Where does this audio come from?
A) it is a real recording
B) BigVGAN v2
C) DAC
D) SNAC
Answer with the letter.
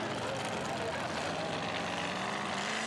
A